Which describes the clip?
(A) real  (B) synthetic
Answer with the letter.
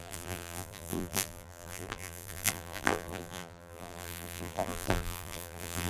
B